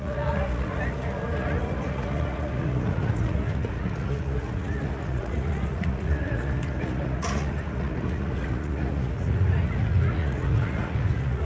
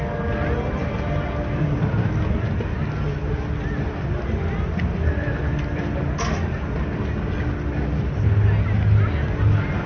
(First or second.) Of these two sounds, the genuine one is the second